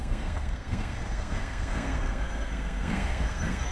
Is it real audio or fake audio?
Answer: fake